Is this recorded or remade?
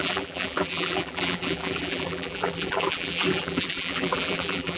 remade